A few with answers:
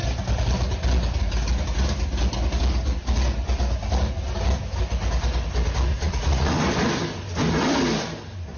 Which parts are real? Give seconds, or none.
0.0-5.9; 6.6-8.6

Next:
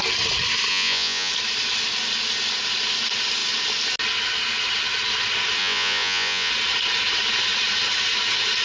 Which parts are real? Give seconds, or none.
0.0-0.7; 1.3-5.6; 6.5-8.6

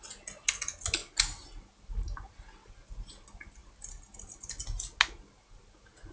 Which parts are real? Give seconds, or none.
0.0-6.1

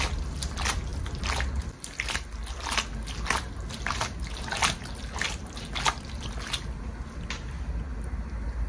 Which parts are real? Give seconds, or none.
0.0-8.7

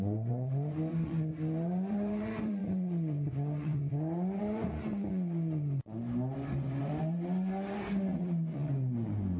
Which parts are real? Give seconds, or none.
6.0-6.8

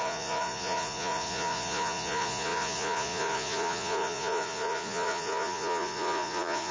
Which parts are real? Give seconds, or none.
none

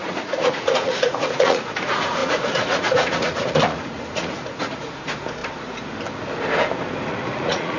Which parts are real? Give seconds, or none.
5.4-7.1